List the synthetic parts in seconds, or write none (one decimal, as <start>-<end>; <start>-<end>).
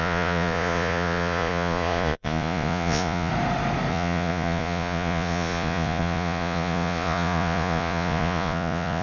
0.0-3.3; 3.9-9.0